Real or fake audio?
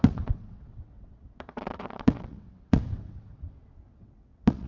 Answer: fake